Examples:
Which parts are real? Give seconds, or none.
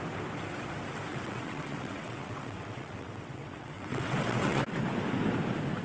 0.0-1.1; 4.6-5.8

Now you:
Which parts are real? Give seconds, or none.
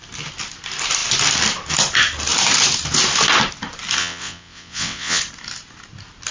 0.0-4.0; 5.2-6.3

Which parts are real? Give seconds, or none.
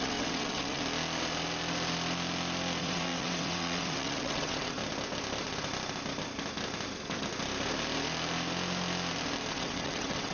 0.8-2.8; 4.8-9.5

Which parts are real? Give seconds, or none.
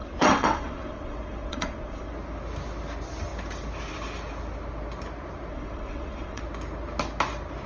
2.1-5.5; 6.4-7.7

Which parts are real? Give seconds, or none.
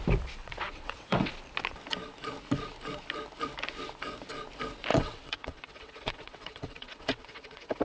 0.0-0.4; 1.3-4.9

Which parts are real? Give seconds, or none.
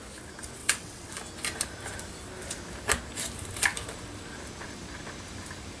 0.0-0.6; 1.1-5.8